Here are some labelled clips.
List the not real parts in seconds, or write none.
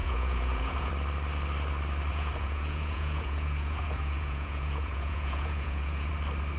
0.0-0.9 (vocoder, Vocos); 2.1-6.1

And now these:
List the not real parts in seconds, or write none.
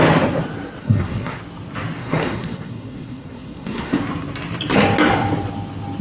0.8-1.4 (codec, SNAC); 2.0-4.0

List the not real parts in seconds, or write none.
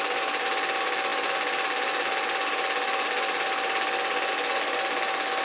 none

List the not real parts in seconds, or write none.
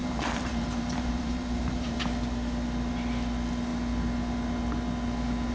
0.0-2.0 (vocoder, BigVGAN v2)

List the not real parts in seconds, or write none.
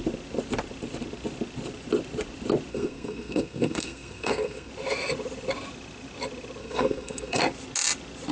2.7-4.7 (codec, SNAC); 6.6-7.4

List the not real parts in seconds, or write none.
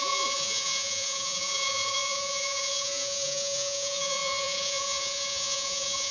0.0-6.1 (vocoder, Vocos)